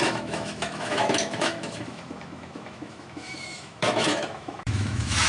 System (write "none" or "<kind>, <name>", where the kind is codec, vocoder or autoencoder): autoencoder, DAC-VAE